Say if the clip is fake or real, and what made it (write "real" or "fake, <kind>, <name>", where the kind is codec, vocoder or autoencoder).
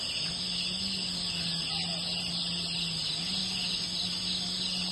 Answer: real